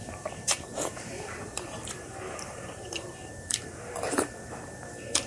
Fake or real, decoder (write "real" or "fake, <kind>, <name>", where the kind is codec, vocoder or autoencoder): fake, vocoder, BigVGAN v2